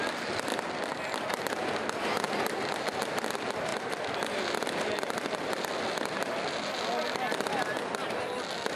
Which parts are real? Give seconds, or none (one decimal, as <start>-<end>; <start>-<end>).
0.0-3.7; 7.5-8.8